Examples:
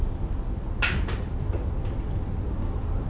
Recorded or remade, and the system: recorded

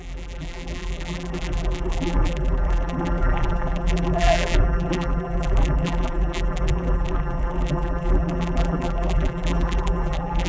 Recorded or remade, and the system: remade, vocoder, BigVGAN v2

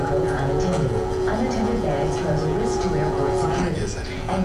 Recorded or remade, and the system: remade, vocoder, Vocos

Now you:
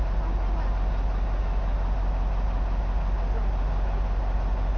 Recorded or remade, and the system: recorded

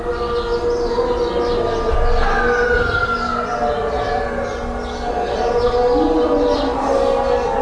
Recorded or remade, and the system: recorded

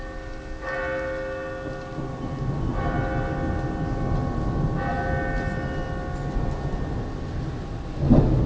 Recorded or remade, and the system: recorded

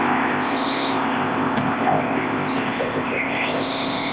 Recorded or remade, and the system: remade, codec, ZipCodec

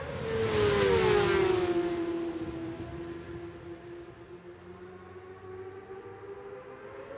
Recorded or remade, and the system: recorded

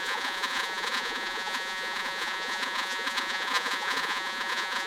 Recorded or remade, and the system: remade, vocoder, Vocos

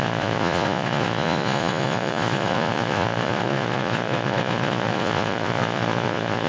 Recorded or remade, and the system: remade, vocoder, Vocos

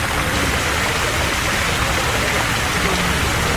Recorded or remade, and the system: recorded